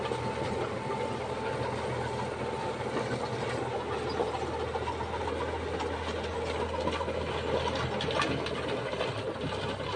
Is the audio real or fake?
real